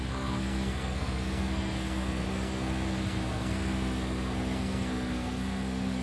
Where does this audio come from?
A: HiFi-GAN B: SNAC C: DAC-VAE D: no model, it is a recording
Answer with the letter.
B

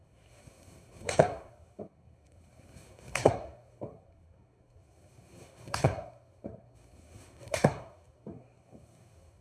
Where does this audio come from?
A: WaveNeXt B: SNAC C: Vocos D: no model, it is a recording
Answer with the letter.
B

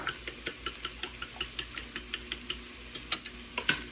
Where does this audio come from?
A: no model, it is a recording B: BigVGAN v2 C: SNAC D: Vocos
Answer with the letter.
A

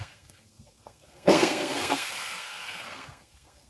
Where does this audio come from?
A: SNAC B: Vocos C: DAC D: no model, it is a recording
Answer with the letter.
A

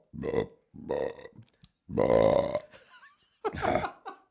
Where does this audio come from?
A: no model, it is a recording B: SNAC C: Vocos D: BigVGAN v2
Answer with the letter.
A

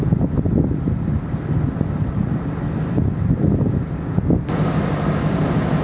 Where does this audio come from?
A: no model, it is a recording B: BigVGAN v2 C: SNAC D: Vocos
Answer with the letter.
A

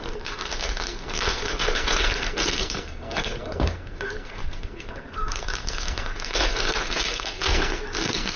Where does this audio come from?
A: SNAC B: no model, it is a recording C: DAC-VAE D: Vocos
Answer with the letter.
A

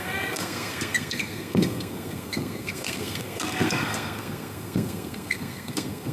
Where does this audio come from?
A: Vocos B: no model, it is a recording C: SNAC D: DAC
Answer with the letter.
C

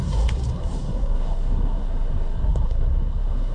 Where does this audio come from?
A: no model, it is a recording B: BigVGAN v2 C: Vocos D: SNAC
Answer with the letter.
D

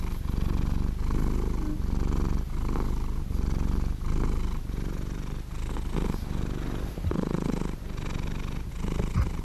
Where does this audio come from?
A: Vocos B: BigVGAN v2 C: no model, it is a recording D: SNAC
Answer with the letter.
C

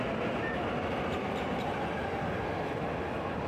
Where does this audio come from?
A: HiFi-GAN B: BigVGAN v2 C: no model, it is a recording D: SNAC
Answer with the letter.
C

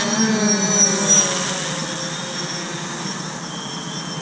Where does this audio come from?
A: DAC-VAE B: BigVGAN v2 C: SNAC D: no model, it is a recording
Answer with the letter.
D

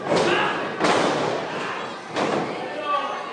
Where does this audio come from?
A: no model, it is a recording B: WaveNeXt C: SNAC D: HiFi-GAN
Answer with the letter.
A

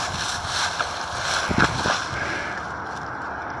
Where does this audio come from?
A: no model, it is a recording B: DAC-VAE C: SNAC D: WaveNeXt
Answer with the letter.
A